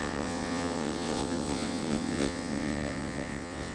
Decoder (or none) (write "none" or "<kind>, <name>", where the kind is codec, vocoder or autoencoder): vocoder, WaveNeXt